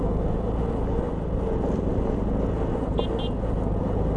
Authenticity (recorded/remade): recorded